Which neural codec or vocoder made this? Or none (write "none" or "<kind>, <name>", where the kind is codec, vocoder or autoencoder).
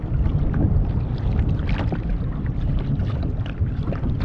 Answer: vocoder, BigVGAN v2